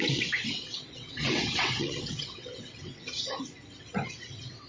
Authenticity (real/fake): fake